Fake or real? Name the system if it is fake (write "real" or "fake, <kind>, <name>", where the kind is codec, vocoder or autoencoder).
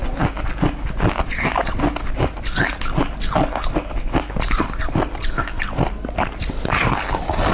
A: real